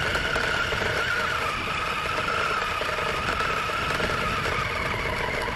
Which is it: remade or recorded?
recorded